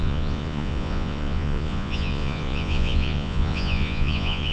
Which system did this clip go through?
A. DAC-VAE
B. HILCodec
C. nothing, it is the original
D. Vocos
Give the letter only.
D